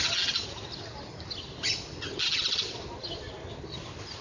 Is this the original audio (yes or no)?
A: yes